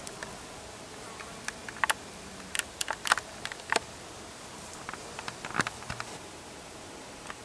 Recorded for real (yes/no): yes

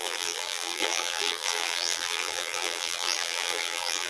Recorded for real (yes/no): no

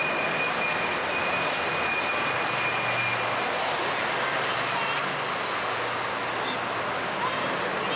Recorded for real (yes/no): yes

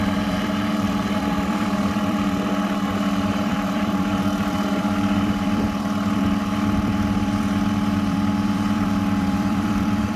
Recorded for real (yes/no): no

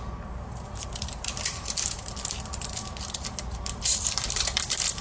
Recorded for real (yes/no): no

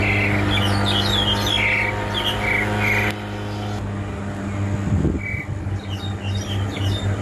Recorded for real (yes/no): yes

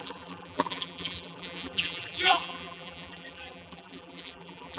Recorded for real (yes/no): no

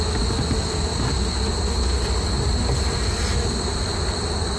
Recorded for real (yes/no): yes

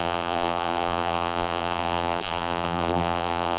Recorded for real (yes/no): no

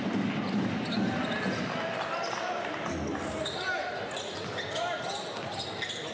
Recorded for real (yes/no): yes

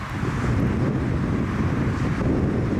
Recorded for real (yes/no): yes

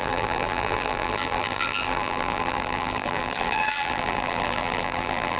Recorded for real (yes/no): no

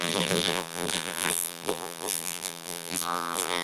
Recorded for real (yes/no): no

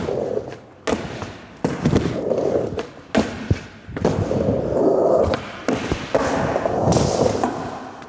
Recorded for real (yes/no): yes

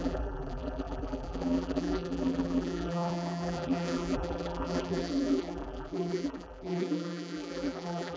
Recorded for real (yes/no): no